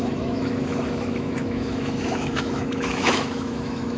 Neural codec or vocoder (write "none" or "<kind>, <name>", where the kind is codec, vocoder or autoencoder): autoencoder, DAC-VAE